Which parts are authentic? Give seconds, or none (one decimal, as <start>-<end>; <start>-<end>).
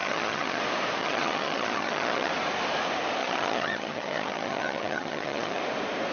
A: 0.6-1.0; 2.3-3.2; 5.6-6.1